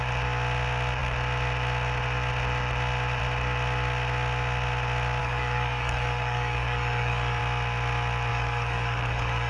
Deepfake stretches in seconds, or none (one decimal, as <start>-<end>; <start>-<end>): 5.2-7.4; 8.3-9.5

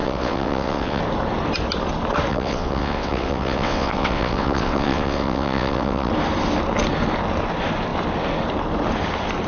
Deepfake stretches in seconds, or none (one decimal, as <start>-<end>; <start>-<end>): 0.0-1.0; 2.3-6.1

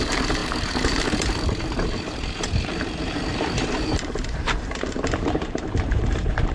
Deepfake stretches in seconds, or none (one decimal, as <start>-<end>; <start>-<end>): 0.0-6.5

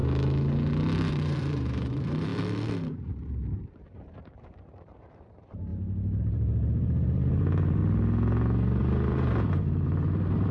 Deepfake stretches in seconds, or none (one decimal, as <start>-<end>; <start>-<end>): 1.1-2.3; 3.0-5.7; 6.2-7.8; 8.8-10.5

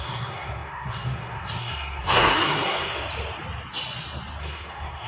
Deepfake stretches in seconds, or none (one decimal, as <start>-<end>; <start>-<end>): 0.0-2.9; 4.4-5.1

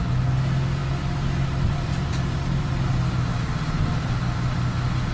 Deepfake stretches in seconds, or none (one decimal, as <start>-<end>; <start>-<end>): 0.8-2.7